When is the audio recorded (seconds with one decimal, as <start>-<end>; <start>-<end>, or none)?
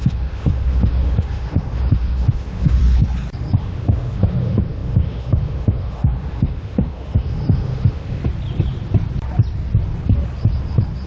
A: 2.8-3.6; 8.2-11.1